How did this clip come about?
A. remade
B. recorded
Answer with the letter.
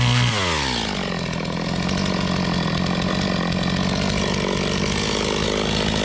B